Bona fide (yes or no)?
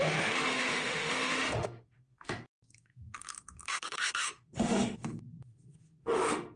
no